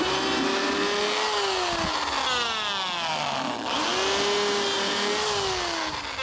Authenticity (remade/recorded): recorded